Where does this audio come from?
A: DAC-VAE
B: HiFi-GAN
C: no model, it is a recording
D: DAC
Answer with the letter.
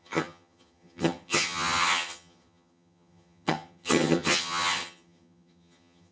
B